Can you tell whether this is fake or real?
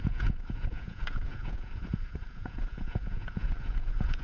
fake